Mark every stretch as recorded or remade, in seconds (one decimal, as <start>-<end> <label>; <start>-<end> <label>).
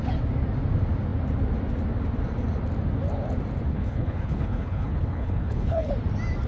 0.0-3.7 recorded; 3.7-5.9 remade; 5.9-6.5 recorded